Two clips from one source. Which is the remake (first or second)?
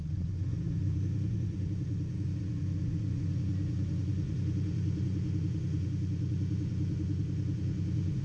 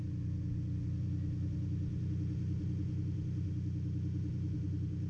first